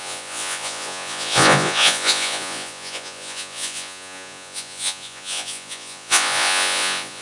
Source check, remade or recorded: remade